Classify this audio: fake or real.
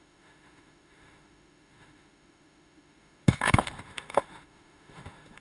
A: fake